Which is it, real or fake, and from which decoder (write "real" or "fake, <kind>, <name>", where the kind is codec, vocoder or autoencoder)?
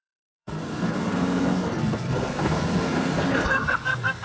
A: fake, codec, SNAC